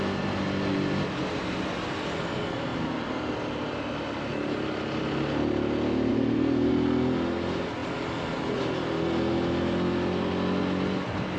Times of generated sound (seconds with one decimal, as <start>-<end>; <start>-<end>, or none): 6.1-6.7